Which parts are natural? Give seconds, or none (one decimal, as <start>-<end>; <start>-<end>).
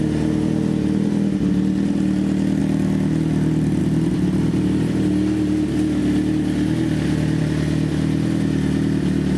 0.0-9.4